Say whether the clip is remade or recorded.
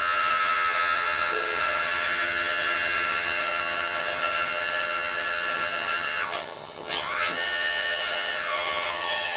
remade